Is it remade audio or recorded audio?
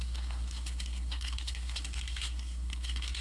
remade